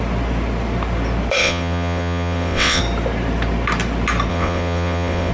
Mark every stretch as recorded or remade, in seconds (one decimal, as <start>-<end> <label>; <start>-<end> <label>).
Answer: 0.0-1.4 recorded; 1.4-2.8 remade; 2.8-4.3 recorded; 4.3-5.3 remade